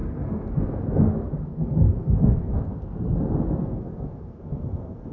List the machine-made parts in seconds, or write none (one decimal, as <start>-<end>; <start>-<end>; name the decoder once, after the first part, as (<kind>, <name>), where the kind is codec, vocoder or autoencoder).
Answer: 0.0-0.6 (codec, SNAC); 1.5-2.6; 3.6-5.1